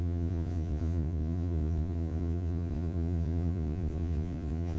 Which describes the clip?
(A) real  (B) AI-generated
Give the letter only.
B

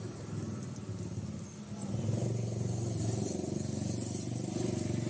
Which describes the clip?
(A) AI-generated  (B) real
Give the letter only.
B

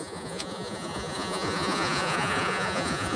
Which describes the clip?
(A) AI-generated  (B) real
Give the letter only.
A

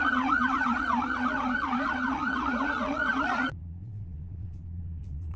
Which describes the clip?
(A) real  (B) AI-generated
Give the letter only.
B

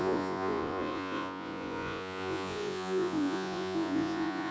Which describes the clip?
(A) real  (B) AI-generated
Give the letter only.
B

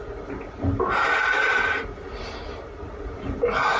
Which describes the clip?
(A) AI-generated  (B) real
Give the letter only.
B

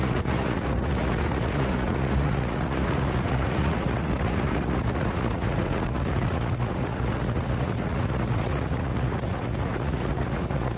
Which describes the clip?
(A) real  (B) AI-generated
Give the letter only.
B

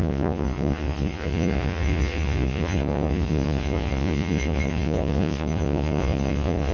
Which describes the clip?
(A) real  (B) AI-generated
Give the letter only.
B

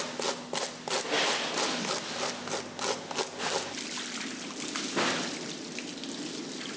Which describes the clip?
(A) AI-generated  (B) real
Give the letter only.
B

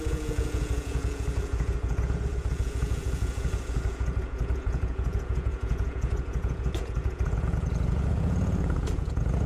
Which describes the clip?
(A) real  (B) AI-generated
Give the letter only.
B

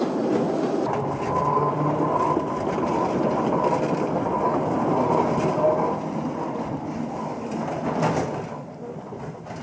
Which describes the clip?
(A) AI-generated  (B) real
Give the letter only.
B